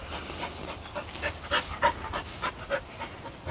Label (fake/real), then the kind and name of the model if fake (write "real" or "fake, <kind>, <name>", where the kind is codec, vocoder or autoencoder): real